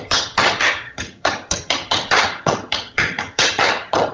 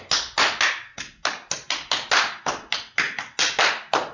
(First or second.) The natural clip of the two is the second